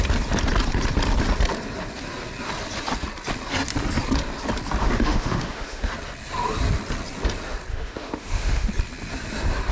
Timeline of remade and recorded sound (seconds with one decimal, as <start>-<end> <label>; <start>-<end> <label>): 0.0-4.8 recorded; 4.8-5.9 remade; 5.9-7.7 recorded; 7.7-8.7 remade; 8.7-9.7 recorded